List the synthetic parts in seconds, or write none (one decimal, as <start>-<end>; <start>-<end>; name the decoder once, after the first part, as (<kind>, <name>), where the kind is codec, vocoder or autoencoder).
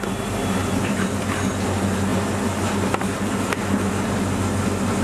0.6-1.3 (vocoder, BigVGAN v2)